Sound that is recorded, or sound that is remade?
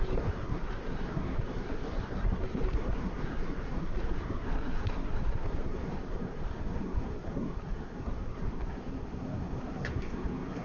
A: remade